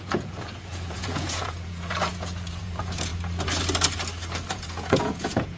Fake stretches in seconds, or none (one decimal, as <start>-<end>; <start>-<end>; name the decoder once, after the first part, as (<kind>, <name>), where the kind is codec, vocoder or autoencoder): 0.0-3.1 (vocoder, Vocos); 4.5-5.6